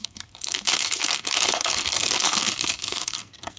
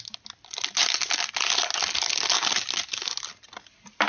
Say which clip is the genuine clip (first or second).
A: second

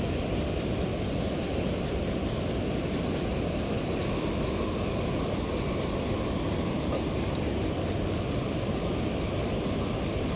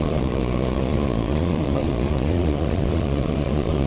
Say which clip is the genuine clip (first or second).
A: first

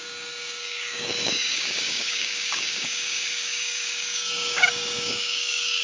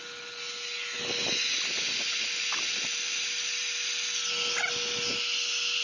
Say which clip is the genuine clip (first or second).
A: second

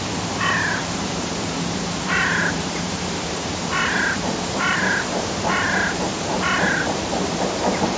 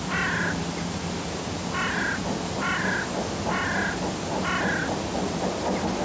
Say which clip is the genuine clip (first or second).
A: second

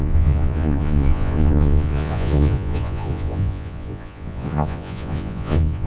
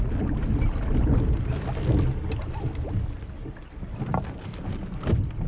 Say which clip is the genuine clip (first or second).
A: second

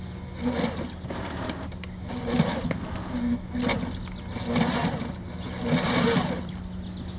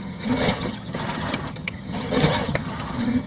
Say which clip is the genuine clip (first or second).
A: first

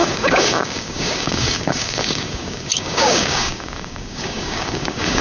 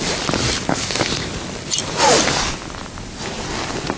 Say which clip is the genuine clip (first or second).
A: second